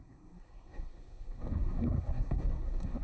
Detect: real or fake fake